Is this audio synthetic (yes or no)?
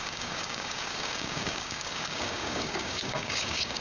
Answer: yes